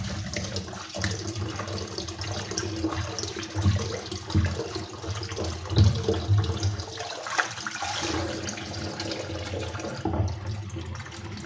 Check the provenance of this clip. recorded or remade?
recorded